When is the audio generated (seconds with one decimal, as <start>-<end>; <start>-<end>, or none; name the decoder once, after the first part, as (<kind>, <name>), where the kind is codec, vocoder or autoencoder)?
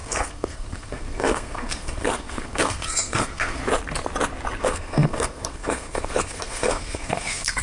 0.0-3.6 (codec, SNAC); 4.6-7.6